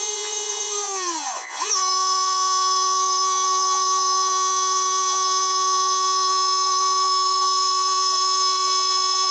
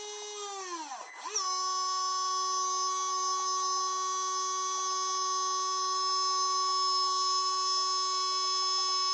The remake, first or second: first